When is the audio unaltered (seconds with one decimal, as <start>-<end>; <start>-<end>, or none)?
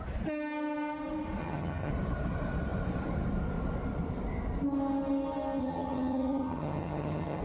0.0-1.4; 1.9-5.6